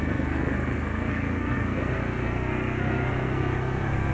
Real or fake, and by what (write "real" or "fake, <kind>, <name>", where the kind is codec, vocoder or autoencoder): fake, codec, SNAC